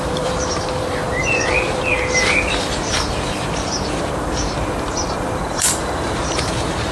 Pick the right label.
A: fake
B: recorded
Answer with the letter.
A